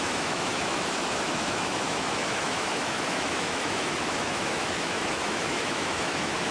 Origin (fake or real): fake